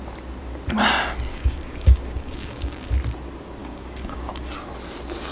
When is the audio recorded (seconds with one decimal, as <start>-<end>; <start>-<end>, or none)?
0.0-1.3; 2.9-3.6; 4.3-5.3